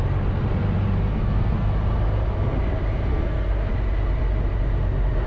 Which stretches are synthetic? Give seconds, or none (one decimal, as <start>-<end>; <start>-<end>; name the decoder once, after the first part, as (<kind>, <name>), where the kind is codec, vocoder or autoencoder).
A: 1.1-1.7 (codec, SNAC); 3.1-3.7